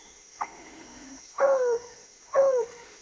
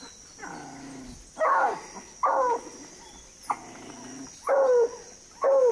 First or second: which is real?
second